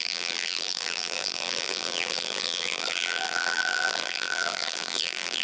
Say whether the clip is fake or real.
fake